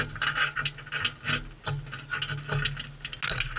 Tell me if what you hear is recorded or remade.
recorded